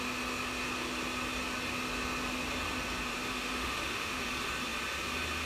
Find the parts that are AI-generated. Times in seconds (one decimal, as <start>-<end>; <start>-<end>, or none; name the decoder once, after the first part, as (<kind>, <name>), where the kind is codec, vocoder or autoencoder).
3.1-4.2 (autoencoder, DAC-VAE)